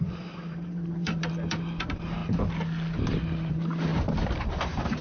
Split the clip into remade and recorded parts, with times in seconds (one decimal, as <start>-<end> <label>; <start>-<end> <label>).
0.0-2.2 remade; 2.2-3.5 recorded; 3.5-3.9 remade; 3.9-4.4 recorded; 4.4-5.0 remade